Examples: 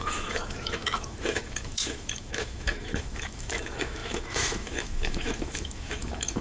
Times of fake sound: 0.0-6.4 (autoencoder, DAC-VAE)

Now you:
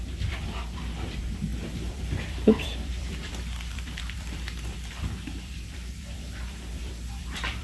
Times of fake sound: 0.0-7.6 (vocoder, BigVGAN v2)